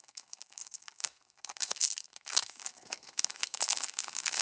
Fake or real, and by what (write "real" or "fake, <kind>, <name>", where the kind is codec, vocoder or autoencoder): fake, codec, SNAC